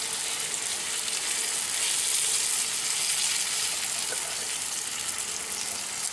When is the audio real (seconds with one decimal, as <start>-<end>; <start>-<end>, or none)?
0.0-6.1